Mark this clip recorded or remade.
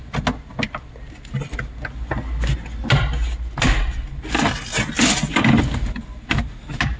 recorded